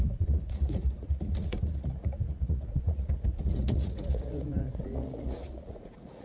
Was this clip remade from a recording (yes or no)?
yes